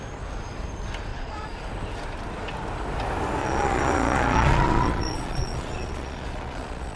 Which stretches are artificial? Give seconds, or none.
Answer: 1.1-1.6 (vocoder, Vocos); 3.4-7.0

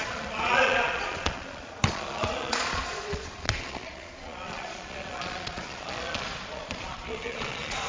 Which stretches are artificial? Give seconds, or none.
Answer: 0.0-7.9 (vocoder, Vocos)

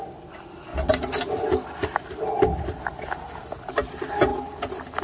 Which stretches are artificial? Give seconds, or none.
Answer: none

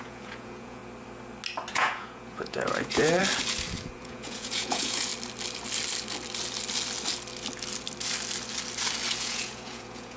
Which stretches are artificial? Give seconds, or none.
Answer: 0.0-0.8 (vocoder, Vocos); 1.7-3.2; 4.0-5.1; 9.2-10.2